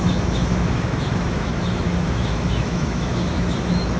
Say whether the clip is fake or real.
fake